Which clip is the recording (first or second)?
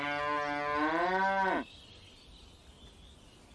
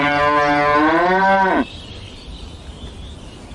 first